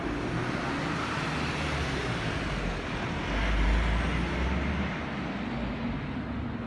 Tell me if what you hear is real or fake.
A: real